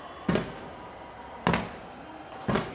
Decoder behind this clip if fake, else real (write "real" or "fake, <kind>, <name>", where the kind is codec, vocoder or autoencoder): real